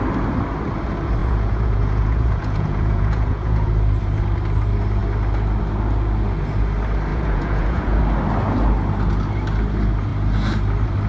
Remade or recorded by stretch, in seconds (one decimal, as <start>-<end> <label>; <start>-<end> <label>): 0.0-1.2 recorded; 1.2-3.7 remade; 3.7-7.1 recorded; 7.1-8.0 remade; 8.0-11.1 recorded

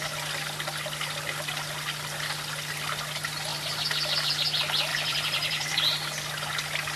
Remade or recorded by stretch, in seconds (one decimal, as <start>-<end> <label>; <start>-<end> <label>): 0.0-4.9 recorded; 4.9-5.8 remade; 5.8-7.0 recorded

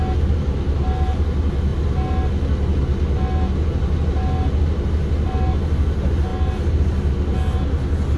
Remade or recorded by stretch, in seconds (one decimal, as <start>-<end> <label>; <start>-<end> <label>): 0.0-8.2 recorded

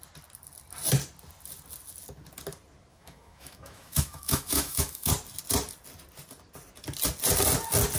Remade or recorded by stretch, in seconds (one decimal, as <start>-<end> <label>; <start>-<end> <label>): 0.0-2.9 recorded; 2.9-5.1 remade; 5.1-8.0 recorded

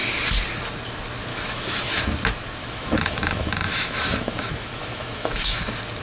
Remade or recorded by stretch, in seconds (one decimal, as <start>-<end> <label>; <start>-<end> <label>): 0.0-1.3 recorded; 1.3-2.0 remade; 2.0-2.6 recorded; 2.6-5.6 remade; 5.6-6.0 recorded

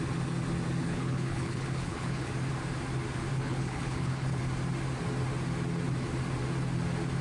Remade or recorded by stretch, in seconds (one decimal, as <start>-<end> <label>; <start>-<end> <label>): 0.0-0.8 recorded; 0.8-2.3 remade; 2.3-3.3 recorded; 3.3-4.4 remade; 4.4-7.2 recorded